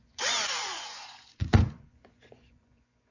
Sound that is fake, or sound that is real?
fake